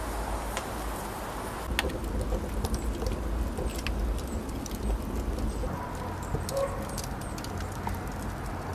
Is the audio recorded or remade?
recorded